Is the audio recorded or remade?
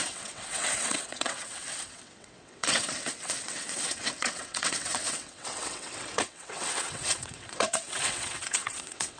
remade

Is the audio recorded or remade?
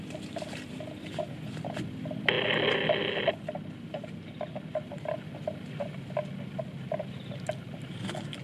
recorded